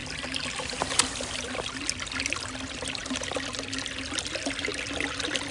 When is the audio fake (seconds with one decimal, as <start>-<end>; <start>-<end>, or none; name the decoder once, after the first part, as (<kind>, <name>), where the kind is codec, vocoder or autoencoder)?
none